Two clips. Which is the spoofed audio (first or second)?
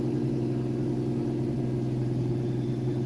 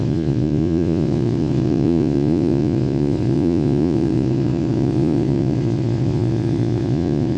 second